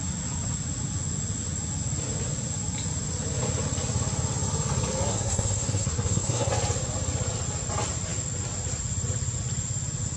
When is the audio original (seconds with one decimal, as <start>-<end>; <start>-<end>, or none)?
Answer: 0.0-5.1; 6.5-10.2